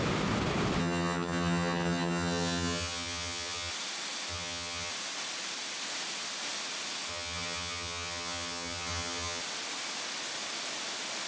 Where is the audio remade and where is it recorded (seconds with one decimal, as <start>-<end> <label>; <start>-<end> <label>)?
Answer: 0.0-0.8 recorded; 0.8-3.7 remade; 3.7-4.3 recorded; 4.3-4.9 remade; 4.9-7.1 recorded; 7.1-9.4 remade; 9.4-11.3 recorded